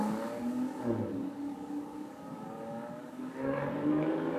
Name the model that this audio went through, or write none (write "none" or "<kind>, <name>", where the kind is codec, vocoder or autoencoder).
codec, DAC